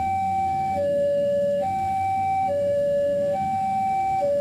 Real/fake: fake